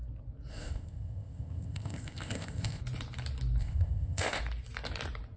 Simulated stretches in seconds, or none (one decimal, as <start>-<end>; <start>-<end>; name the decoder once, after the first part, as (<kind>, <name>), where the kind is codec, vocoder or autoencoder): 0.5-2.8 (codec, ZipCodec); 3.6-4.4